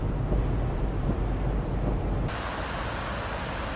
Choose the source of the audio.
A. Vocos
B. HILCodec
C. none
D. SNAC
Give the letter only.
C